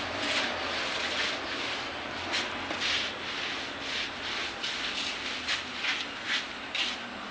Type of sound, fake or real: real